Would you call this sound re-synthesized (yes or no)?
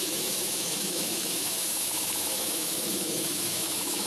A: yes